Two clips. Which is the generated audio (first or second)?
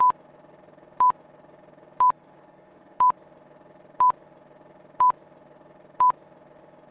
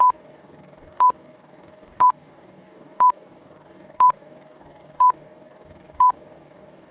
second